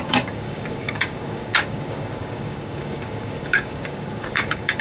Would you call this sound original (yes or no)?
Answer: no